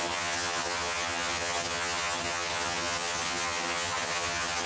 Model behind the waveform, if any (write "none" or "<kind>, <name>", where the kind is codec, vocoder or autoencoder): vocoder, HiFi-GAN